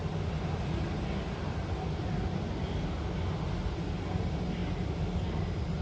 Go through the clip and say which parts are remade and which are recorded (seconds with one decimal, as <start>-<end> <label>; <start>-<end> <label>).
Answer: 0.0-5.8 recorded